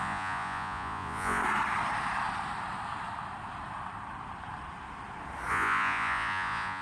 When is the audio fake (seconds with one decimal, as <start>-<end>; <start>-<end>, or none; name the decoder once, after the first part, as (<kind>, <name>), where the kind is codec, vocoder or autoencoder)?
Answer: 0.0-1.4 (vocoder, Vocos); 5.5-6.8